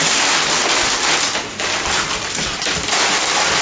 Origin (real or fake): real